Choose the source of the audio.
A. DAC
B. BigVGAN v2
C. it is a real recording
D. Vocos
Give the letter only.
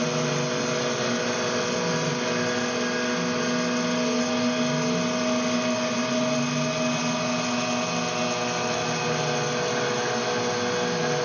C